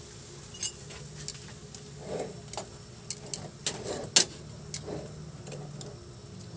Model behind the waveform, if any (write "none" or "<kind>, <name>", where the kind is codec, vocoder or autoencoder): none